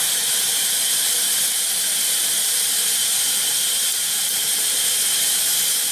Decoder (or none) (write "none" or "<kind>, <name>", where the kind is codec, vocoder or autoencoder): none